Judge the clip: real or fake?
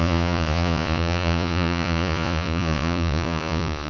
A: fake